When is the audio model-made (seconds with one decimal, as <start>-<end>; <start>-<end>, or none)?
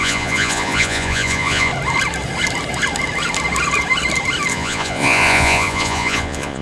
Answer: 0.0-1.7; 4.5-6.6